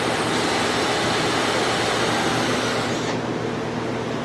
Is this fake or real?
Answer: real